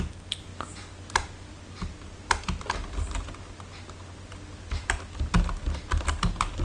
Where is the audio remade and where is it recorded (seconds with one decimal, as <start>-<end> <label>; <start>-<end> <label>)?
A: 0.0-6.6 recorded